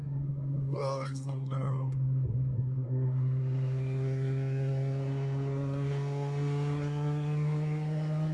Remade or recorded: remade